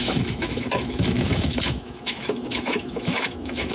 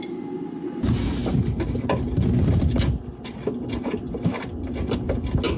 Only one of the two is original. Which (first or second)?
second